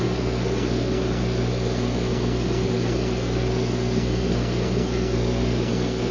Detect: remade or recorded remade